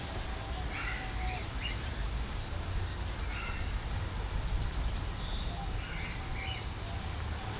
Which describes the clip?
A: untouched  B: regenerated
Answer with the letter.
A